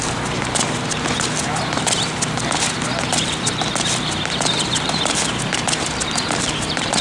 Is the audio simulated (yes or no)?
no